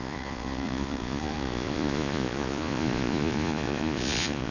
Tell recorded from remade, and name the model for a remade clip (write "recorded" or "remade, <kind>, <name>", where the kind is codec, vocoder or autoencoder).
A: remade, vocoder, Vocos